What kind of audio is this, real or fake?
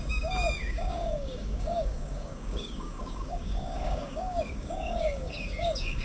fake